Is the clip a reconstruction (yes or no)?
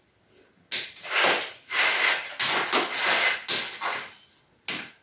no